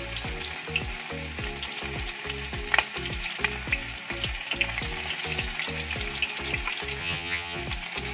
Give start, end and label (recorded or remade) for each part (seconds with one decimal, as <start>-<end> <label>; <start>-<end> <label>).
0.0-7.0 recorded; 7.0-7.6 remade; 7.6-8.1 recorded